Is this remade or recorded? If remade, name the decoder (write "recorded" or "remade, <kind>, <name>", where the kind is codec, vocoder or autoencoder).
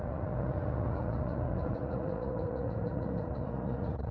remade, vocoder, Vocos